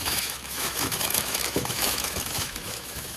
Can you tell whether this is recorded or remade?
remade